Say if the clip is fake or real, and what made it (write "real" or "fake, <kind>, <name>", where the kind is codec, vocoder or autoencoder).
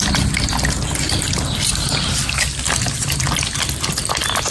real